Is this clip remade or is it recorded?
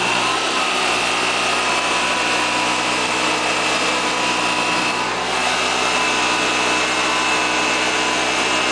recorded